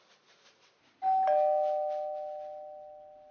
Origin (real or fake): real